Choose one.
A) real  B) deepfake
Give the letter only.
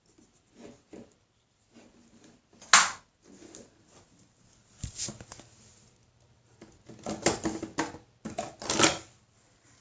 A